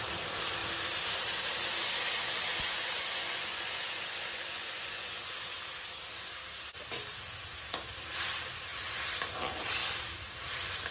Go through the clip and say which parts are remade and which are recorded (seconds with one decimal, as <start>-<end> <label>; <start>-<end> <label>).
0.0-2.5 recorded; 2.5-5.6 remade; 5.6-10.9 recorded